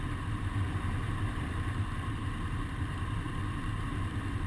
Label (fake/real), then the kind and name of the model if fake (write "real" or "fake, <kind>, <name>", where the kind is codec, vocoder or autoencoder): fake, vocoder, BigVGAN v2